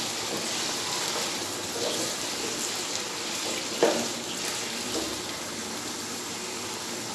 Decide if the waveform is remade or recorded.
recorded